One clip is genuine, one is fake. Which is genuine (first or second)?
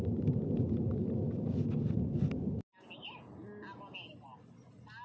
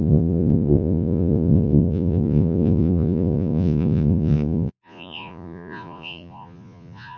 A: first